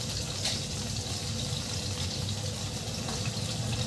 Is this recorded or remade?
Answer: recorded